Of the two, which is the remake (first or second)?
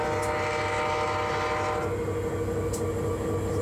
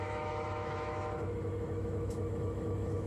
second